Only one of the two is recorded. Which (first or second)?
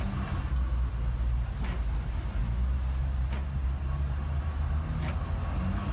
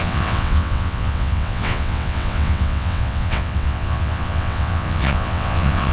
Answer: first